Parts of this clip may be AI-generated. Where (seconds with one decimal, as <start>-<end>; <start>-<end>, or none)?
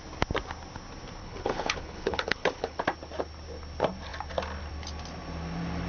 1.2-2.8